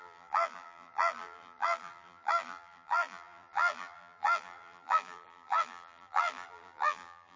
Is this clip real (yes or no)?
no